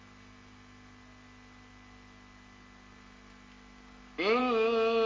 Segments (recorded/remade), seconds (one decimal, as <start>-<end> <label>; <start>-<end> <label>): 0.0-5.1 recorded

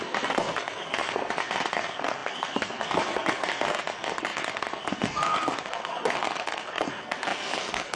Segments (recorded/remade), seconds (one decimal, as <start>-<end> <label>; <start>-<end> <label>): 0.0-8.0 remade

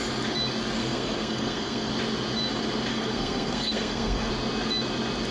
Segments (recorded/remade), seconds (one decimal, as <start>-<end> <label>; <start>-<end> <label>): 0.0-0.8 recorded; 0.8-1.9 remade; 1.9-2.9 recorded; 2.9-4.3 remade; 4.3-5.3 recorded

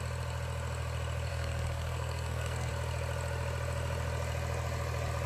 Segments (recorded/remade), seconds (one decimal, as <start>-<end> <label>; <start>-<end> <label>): 0.0-1.3 recorded; 1.3-2.7 remade; 2.7-5.3 recorded